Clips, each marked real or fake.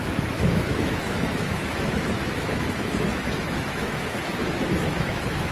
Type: fake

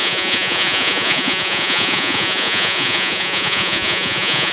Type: fake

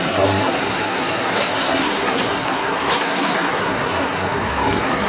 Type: fake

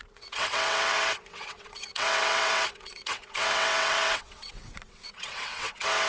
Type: fake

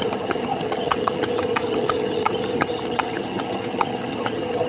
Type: fake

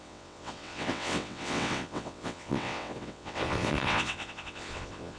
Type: fake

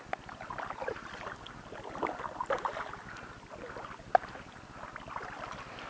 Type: real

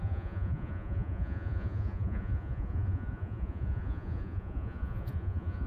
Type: fake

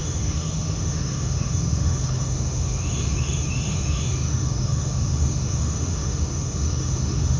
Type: fake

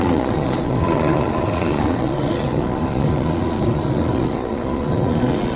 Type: fake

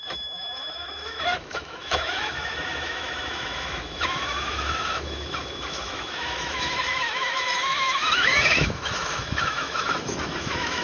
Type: fake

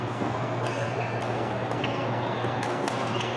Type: fake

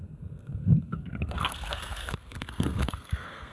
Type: fake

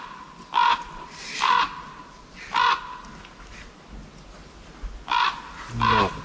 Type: real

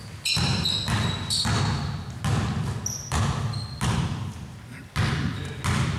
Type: real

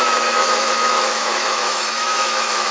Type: fake